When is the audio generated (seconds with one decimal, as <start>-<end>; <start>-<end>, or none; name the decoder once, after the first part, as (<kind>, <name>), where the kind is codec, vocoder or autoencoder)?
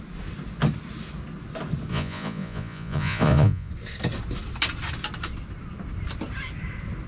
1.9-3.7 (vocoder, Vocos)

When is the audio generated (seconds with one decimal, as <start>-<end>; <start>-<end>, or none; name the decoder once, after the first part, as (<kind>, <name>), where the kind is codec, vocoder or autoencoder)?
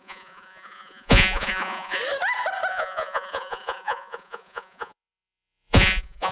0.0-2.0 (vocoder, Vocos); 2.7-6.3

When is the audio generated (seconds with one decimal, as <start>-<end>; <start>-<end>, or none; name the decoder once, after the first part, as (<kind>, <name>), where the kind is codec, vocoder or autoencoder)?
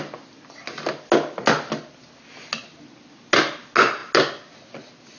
none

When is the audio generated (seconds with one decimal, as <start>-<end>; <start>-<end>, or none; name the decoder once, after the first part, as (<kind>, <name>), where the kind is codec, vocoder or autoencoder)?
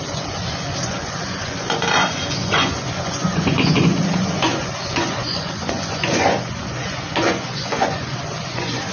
0.0-8.9 (vocoder, Vocos)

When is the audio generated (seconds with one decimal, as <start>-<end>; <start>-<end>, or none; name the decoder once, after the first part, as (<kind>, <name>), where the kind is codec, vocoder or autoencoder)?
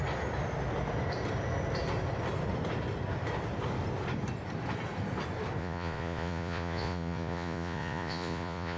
5.6-8.8 (vocoder, Vocos)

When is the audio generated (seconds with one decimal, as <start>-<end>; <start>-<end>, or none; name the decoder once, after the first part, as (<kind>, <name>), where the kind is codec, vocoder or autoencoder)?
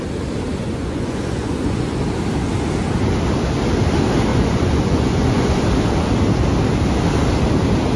0.5-2.0 (vocoder, Vocos); 4.3-5.6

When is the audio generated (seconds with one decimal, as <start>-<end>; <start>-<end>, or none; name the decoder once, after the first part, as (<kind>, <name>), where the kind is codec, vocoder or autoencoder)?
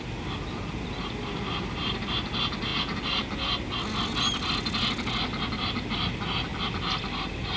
none